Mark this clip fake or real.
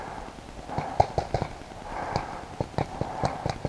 real